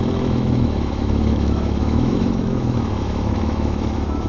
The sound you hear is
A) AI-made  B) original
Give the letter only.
A